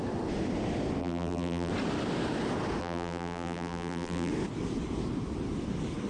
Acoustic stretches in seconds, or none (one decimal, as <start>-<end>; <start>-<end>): 0.0-1.0; 1.7-2.8; 4.3-6.1